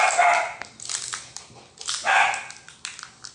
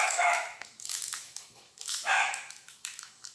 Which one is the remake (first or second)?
second